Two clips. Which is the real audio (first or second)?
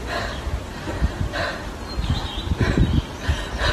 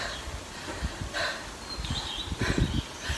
second